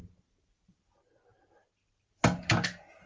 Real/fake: real